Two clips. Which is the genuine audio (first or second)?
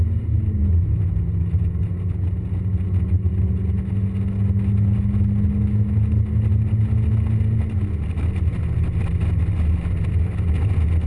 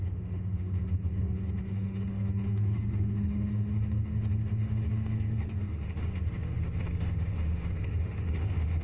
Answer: first